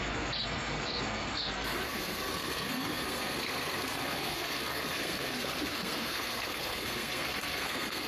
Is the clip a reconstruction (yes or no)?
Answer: yes